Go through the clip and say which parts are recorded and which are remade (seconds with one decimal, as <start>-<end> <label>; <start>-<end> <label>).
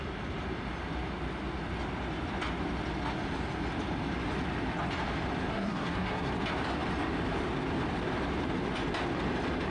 0.0-5.5 recorded; 5.5-6.3 remade; 6.3-9.7 recorded